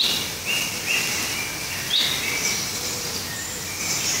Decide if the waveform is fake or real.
real